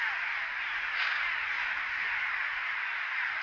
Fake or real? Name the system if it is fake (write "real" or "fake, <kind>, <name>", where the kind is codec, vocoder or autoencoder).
real